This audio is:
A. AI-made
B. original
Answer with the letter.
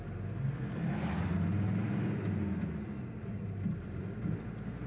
B